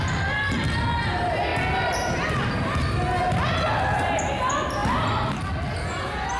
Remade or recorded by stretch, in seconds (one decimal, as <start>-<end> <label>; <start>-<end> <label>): 0.0-6.4 recorded